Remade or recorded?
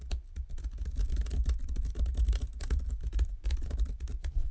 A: recorded